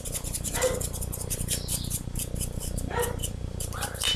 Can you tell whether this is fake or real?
fake